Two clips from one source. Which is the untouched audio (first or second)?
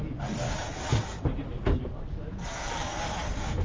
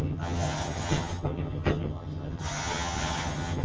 first